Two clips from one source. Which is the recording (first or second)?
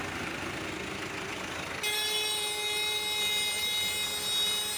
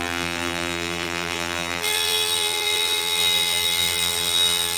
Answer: first